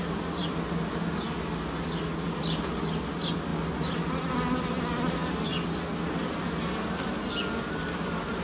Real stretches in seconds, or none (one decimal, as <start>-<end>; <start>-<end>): 0.0-8.4